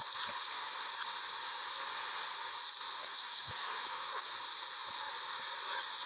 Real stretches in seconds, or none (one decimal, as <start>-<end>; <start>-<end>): 0.0-3.0; 4.3-6.1